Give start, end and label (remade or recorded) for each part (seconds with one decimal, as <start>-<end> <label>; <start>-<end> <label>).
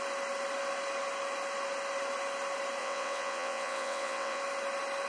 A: 0.0-2.8 recorded; 2.8-4.4 remade; 4.4-5.1 recorded